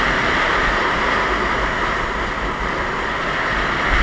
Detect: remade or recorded recorded